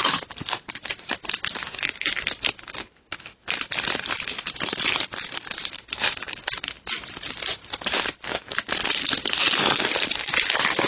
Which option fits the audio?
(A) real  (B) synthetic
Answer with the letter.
A